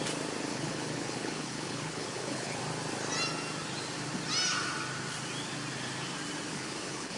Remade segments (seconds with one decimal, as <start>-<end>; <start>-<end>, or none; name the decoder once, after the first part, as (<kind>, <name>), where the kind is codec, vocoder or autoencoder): 0.5-2.6 (codec, HILCodec); 6.5-7.2